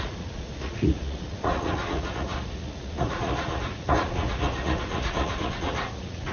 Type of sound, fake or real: fake